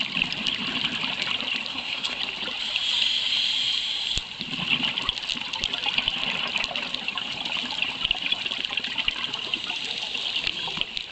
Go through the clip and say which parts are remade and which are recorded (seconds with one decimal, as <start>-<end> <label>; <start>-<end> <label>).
0.0-1.7 recorded; 1.7-2.2 remade; 2.2-11.1 recorded